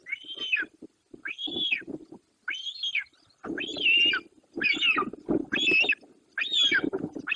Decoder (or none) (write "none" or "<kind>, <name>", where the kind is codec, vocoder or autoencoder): none